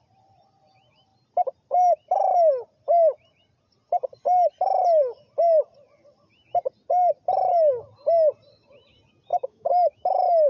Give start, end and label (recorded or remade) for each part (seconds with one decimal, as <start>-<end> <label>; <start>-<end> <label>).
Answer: 0.0-9.3 recorded; 9.3-10.5 remade